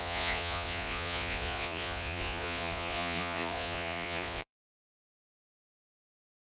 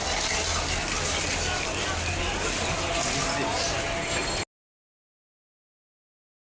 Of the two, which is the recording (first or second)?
second